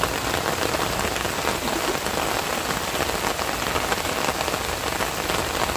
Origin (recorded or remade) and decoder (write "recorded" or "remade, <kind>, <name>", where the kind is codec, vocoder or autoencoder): recorded